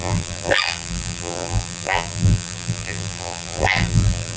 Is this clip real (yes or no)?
no